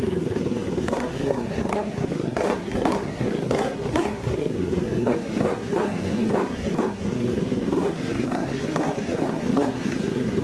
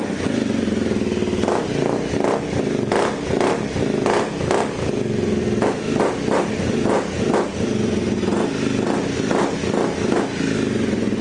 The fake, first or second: first